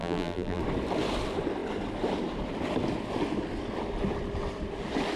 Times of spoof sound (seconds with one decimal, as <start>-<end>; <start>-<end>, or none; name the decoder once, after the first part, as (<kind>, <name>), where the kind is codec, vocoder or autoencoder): 0.0-0.6 (vocoder, BigVGAN v2)